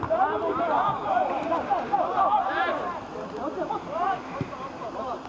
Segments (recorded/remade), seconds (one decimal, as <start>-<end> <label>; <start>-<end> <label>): 0.0-5.3 recorded